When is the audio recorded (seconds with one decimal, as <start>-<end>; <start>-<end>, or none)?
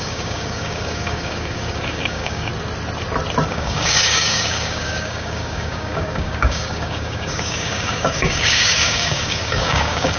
2.5-3.5